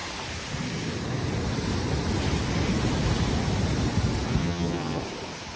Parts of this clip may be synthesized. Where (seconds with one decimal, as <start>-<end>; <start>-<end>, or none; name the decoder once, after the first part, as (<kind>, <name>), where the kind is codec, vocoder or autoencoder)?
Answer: 4.4-5.0 (vocoder, HiFi-GAN)